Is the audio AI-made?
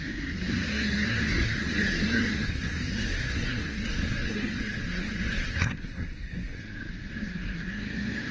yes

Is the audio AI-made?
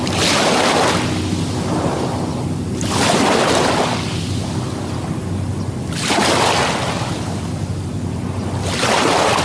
no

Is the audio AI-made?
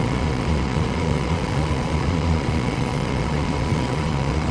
yes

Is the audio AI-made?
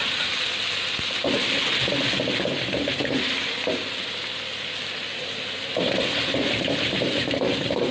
no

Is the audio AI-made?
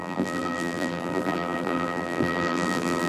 yes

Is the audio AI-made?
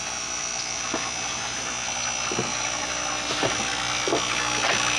no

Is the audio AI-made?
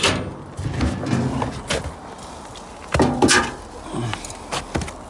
no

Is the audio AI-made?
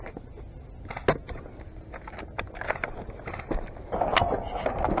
no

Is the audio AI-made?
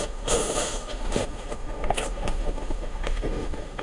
yes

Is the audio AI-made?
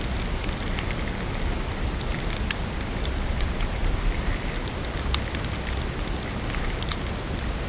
no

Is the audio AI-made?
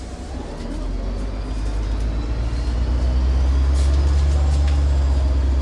no